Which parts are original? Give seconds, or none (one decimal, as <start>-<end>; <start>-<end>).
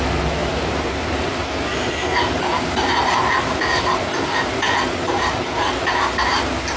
0.0-0.4; 1.2-6.8